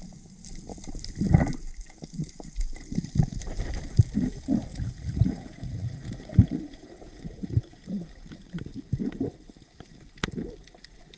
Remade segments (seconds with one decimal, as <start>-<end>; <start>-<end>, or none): 4.7-7.9